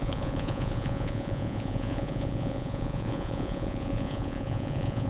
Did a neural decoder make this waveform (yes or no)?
yes